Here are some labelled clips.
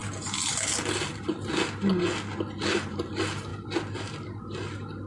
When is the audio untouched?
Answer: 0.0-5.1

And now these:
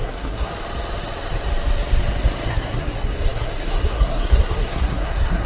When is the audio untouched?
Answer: 0.5-2.5